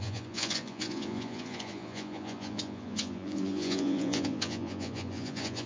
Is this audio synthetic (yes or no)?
yes